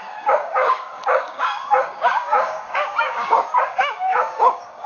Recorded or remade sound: remade